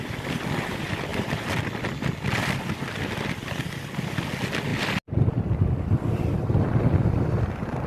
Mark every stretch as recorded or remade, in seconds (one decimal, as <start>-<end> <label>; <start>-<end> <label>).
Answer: 0.0-1.1 recorded; 1.1-2.6 remade; 2.6-7.9 recorded